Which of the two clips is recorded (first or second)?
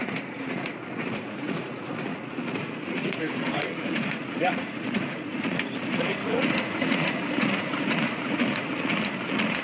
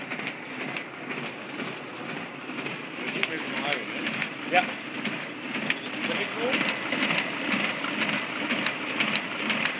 second